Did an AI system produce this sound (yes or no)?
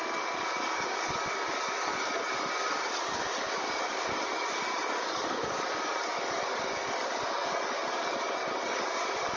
yes